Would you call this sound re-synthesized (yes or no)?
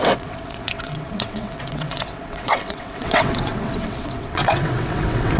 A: yes